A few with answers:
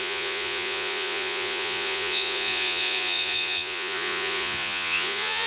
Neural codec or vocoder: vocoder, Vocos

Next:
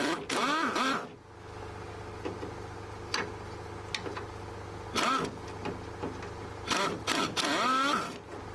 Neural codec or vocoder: none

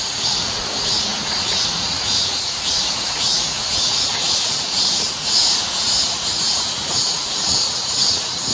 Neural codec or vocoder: vocoder, Vocos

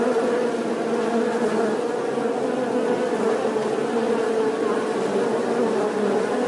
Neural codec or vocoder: none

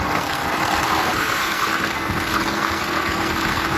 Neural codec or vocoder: codec, SNAC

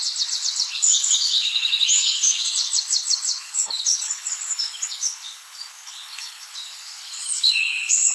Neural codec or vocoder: codec, HILCodec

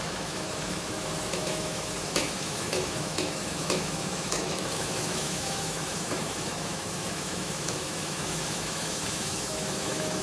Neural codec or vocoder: autoencoder, DAC-VAE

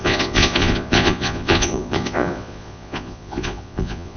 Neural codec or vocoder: vocoder, Vocos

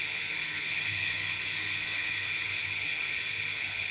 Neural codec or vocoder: codec, HILCodec